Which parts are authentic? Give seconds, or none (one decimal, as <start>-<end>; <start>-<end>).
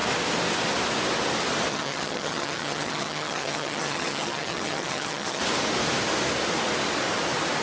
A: 0.0-1.7; 5.4-7.6